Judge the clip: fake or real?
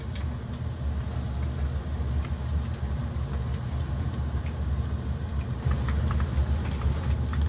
real